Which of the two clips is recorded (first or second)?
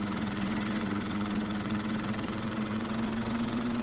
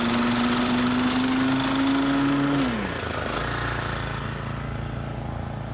second